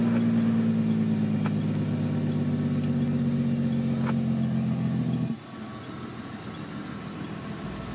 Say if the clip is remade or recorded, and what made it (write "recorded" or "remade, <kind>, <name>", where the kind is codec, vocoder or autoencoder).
recorded